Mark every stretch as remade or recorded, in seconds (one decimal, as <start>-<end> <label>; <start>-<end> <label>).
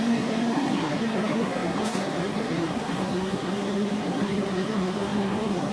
0.0-5.7 remade